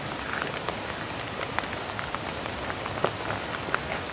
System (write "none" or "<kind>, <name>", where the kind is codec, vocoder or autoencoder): none